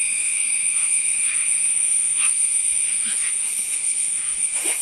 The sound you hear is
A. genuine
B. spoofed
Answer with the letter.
B